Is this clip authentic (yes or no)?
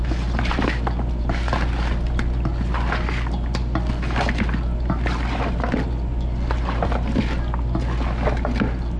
yes